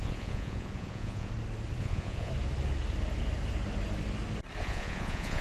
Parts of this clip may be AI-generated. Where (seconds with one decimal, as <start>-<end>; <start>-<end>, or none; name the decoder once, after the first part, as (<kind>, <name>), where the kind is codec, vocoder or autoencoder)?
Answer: 0.0-1.3 (vocoder, Vocos); 1.8-2.3; 4.6-5.4

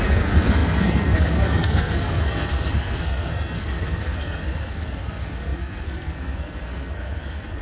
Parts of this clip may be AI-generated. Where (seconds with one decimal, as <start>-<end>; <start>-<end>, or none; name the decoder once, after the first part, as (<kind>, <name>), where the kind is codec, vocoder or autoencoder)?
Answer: 0.0-7.6 (codec, SNAC)

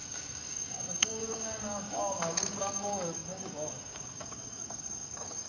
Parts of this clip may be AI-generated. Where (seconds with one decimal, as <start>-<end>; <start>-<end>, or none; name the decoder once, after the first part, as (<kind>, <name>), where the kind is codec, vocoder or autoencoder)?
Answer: 0.0-5.5 (codec, DAC)